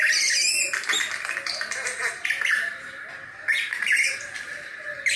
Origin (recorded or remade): recorded